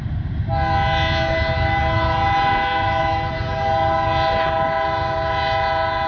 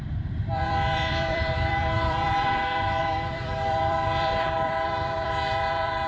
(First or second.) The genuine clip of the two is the first